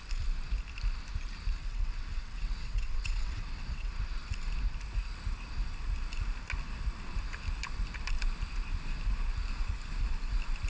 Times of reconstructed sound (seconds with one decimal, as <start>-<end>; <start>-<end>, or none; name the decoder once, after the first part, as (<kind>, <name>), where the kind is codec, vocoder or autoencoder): 1.6-3.9 (vocoder, WaveNeXt)